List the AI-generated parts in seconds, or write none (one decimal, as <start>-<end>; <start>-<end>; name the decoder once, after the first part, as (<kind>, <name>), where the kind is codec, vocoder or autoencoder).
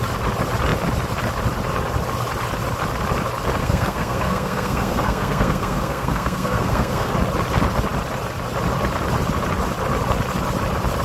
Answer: 3.6-7.1 (codec, SNAC)